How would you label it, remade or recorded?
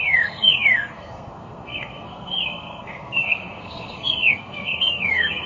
remade